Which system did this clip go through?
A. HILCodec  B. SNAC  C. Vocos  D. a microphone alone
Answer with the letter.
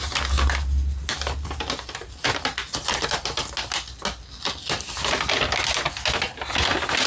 D